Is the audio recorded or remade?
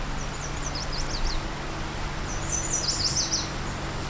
recorded